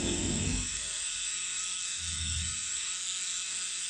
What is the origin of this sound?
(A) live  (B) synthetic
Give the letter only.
B